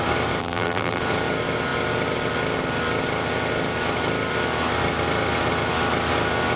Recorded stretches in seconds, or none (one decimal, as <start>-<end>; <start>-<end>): 0.0-0.4; 1.0-6.6